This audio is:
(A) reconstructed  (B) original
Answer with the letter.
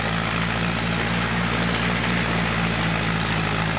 B